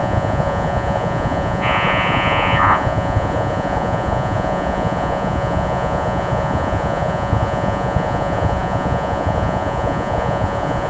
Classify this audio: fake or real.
fake